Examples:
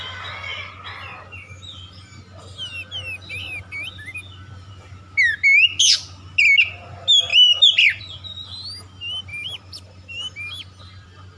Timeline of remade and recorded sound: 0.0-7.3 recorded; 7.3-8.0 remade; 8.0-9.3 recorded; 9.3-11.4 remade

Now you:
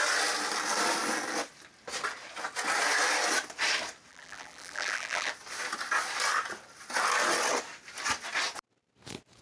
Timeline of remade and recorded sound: 0.0-4.1 recorded; 4.1-5.3 remade; 5.3-9.4 recorded

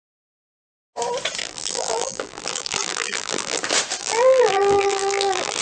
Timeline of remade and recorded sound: 0.0-1.4 recorded; 1.4-3.6 remade; 3.6-4.0 recorded; 4.0-5.6 remade

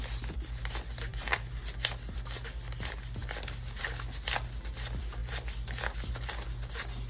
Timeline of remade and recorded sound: 0.0-1.1 recorded; 1.1-1.6 remade; 1.6-7.1 recorded

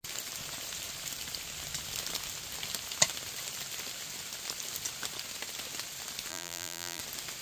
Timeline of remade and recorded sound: 0.0-6.3 recorded; 6.3-7.0 remade; 7.0-7.4 recorded

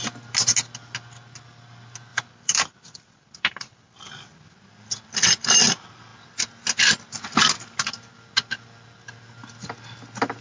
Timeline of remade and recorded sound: 0.0-2.1 recorded; 2.1-4.1 remade; 4.1-10.4 recorded

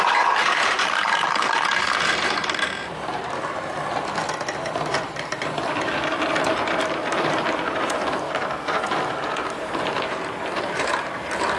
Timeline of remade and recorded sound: 0.0-4.2 remade; 4.2-5.0 recorded; 5.0-11.6 remade

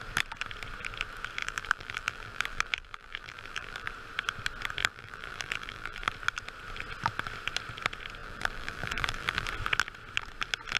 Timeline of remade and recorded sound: 0.0-1.4 recorded; 1.4-3.9 remade; 3.9-4.8 recorded; 4.8-6.1 remade; 6.1-8.2 recorded; 8.2-9.5 remade; 9.5-10.8 recorded